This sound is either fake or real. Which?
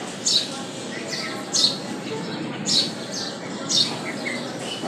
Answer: real